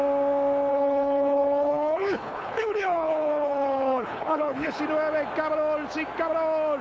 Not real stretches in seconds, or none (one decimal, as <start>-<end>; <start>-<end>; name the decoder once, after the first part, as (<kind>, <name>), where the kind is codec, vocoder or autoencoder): 0.7-4.8 (codec, HILCodec)